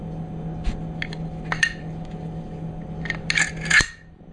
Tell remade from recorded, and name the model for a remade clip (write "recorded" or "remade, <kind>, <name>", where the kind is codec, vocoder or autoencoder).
recorded